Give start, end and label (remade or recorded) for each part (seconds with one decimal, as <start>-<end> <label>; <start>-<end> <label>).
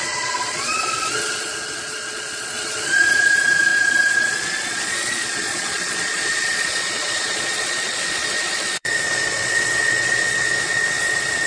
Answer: 0.0-11.5 remade